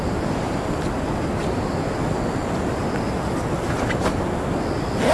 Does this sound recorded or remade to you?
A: recorded